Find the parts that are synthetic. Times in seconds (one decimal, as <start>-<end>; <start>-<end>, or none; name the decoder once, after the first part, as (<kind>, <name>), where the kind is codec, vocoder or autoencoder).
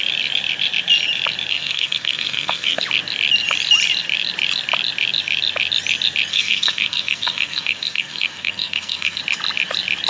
1.5-2.8 (codec, SNAC); 6.3-9.2